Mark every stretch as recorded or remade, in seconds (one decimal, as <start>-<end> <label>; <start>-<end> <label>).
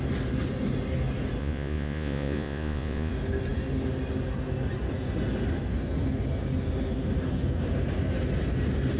0.0-1.4 recorded; 1.4-3.1 remade; 3.1-9.0 recorded